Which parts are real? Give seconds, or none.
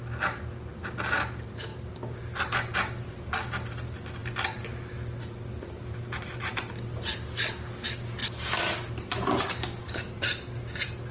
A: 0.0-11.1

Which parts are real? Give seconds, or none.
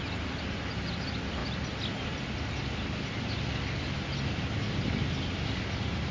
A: 0.0-6.1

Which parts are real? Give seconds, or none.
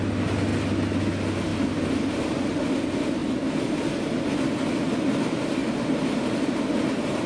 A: 0.0-7.3